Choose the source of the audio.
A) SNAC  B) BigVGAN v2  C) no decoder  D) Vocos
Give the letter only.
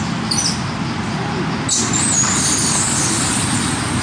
C